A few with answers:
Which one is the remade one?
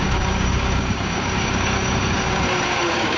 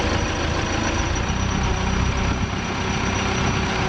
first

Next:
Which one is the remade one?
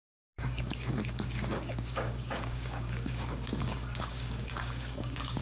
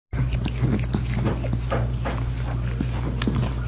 first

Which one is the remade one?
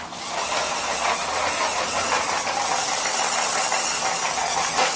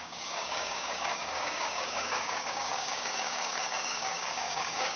second